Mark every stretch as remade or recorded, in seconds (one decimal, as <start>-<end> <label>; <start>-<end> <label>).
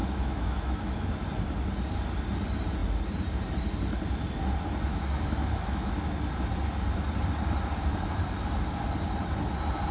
0.0-1.1 remade; 1.1-4.9 recorded; 4.9-5.9 remade; 5.9-9.9 recorded